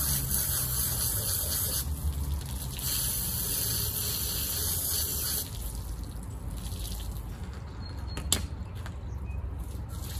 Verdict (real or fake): real